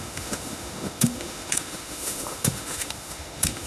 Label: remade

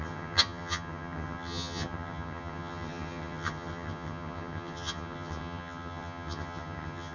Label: remade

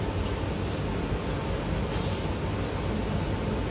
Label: recorded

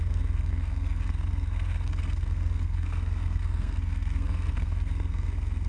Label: remade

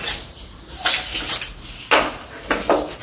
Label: recorded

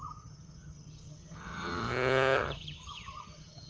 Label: remade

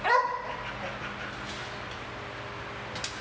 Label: recorded